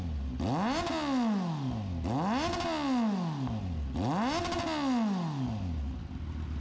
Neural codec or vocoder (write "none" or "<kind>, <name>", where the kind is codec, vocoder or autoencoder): none